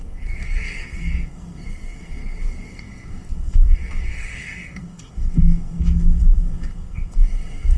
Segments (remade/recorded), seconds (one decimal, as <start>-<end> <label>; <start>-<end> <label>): 0.0-7.8 remade